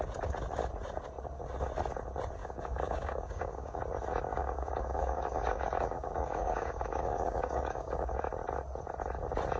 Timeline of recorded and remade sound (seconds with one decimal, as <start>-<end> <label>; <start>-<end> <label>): 0.0-2.4 recorded; 2.4-3.8 remade; 3.8-4.3 recorded; 4.3-8.2 remade; 8.2-9.6 recorded